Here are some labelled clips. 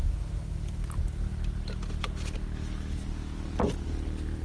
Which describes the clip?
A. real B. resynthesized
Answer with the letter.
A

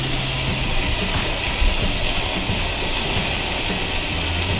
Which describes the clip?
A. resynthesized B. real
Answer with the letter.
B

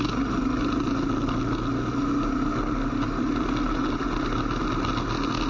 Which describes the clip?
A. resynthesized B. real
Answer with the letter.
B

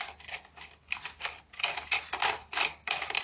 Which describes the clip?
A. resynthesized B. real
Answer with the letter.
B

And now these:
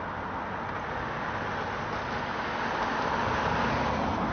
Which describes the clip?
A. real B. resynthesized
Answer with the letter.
A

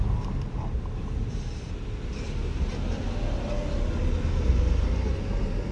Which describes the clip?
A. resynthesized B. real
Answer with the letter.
B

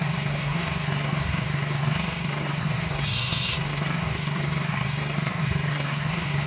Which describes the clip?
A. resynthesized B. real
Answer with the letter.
A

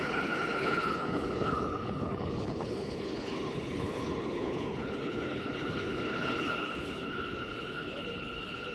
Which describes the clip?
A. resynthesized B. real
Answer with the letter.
A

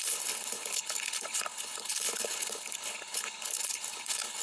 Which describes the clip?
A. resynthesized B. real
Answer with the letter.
A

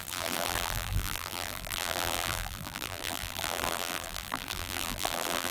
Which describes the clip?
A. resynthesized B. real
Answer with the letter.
A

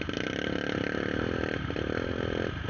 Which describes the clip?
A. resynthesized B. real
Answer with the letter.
A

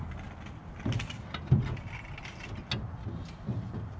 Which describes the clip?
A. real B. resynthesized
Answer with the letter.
A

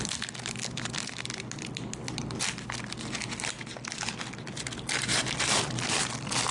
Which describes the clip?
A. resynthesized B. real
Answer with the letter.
B